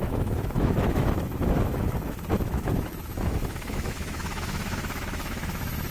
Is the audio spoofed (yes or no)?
yes